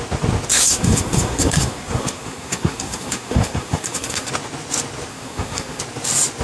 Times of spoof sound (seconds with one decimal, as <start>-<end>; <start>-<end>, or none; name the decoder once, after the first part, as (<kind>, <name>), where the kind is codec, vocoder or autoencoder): 0.5-4.3 (codec, SNAC); 5.1-5.8